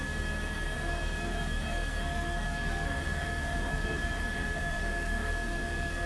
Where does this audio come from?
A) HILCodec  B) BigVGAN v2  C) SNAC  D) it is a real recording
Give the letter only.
C